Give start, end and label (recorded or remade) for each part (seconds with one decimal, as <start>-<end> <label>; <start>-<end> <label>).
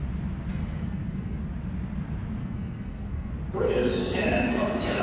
0.0-0.5 recorded; 0.5-1.4 remade; 1.4-2.4 recorded; 2.4-3.3 remade; 3.3-4.0 recorded; 4.0-5.0 remade